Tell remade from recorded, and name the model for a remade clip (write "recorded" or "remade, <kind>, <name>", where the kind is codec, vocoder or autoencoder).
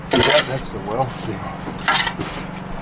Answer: recorded